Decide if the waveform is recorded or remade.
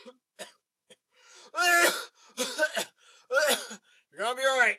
remade